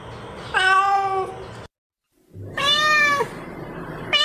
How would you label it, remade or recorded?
recorded